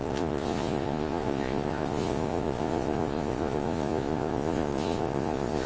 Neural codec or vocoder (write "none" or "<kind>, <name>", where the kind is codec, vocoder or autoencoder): vocoder, Vocos